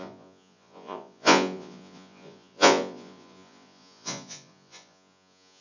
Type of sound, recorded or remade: remade